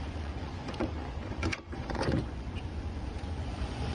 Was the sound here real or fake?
fake